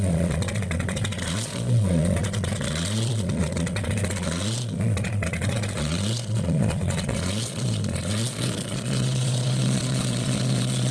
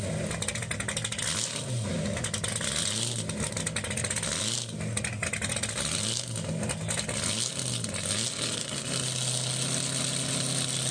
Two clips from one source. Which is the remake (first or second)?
first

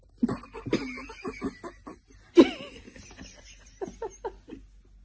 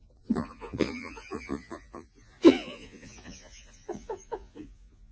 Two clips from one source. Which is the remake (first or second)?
second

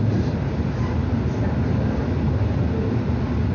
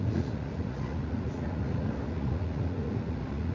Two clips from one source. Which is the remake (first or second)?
second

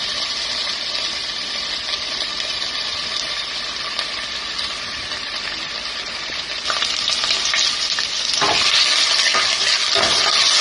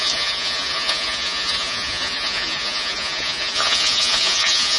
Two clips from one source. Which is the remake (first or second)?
second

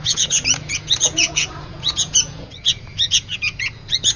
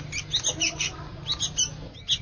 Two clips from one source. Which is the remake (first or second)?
first